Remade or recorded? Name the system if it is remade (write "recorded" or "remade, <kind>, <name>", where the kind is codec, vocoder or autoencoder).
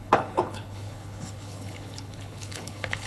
remade, codec, HILCodec